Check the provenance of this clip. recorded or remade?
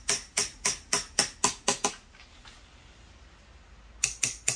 recorded